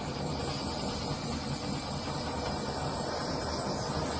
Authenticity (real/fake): real